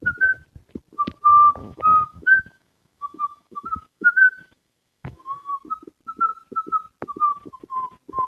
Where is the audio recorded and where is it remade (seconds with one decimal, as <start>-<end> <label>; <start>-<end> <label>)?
0.0-1.6 recorded; 1.6-5.5 remade; 5.5-8.3 recorded